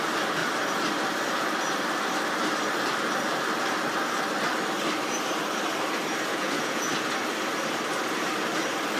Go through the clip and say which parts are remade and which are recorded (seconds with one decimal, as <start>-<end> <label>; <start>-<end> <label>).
0.0-6.3 recorded; 6.3-6.9 remade; 6.9-9.0 recorded